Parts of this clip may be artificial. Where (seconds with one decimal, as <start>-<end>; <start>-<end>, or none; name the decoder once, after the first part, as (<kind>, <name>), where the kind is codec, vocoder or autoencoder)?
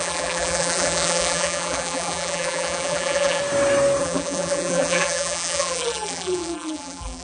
0.0-3.4 (vocoder, BigVGAN v2); 4.0-7.2